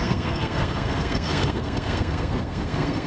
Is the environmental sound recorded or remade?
remade